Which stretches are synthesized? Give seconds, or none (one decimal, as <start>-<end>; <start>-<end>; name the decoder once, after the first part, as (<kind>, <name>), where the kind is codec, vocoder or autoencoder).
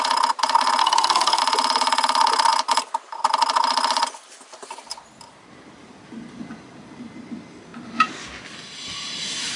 0.8-1.4 (codec, SNAC)